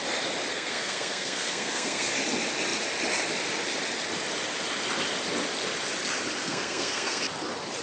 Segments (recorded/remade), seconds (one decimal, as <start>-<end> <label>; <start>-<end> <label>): 0.0-0.5 recorded; 0.5-2.1 remade; 2.1-6.4 recorded; 6.4-7.2 remade; 7.2-7.8 recorded